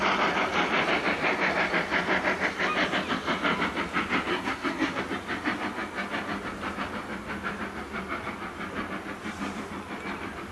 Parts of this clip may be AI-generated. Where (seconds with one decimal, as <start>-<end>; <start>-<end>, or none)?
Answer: 4.3-5.0